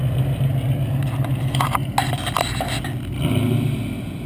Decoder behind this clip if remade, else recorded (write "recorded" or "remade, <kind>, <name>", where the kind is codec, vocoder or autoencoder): recorded